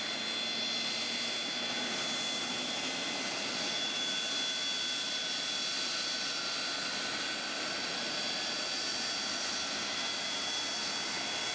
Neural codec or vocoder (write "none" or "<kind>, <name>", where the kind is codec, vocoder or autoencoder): none